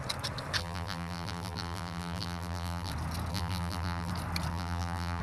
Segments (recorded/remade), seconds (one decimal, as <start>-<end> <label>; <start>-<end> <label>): 0.0-0.6 recorded; 0.6-2.9 remade; 2.9-3.3 recorded; 3.3-4.1 remade; 4.1-4.5 recorded; 4.5-5.2 remade